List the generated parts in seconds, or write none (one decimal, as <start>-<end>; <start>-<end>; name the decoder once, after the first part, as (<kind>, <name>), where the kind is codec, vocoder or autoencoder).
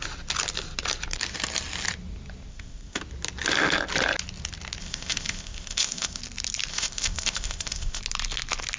2.5-3.0 (codec, ZipCodec); 4.8-6.2; 6.7-8.0